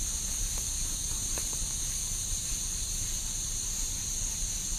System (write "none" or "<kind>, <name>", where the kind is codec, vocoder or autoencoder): vocoder, BigVGAN v2